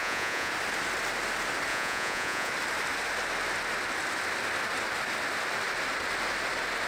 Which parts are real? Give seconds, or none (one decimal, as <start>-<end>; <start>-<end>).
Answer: 0.5-1.7; 2.5-6.9